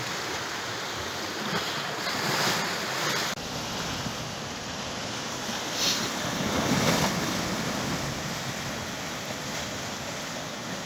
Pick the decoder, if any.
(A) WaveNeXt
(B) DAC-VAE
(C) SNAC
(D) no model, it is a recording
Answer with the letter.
D